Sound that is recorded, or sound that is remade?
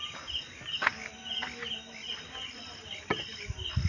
recorded